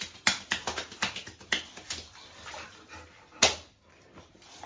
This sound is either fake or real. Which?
real